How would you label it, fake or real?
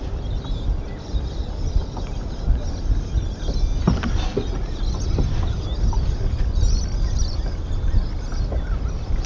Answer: real